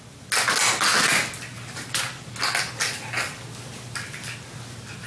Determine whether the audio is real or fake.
real